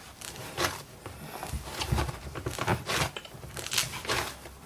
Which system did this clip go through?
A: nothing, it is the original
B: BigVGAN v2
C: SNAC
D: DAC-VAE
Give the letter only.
A